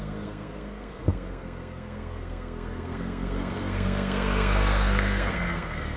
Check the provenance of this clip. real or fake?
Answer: fake